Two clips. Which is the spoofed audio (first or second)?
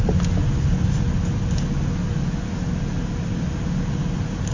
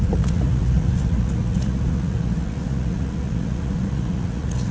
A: second